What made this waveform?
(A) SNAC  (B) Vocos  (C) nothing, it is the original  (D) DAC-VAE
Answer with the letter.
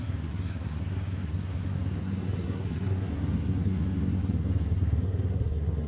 A